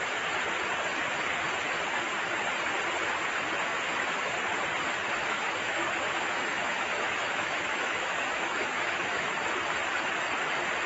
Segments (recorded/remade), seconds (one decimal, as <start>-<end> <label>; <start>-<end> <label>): 0.0-5.2 recorded; 5.2-9.3 remade; 9.3-10.9 recorded